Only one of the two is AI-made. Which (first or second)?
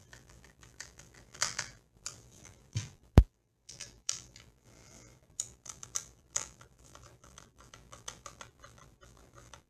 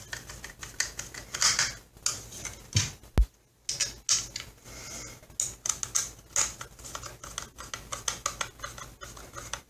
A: first